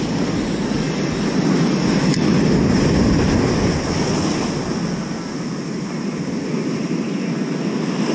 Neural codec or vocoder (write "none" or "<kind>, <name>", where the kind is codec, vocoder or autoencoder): none